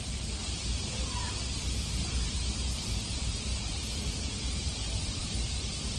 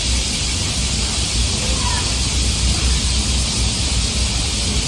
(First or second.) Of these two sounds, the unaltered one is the second